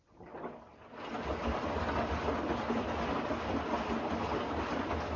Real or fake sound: real